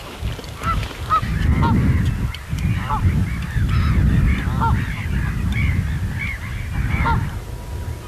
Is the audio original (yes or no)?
yes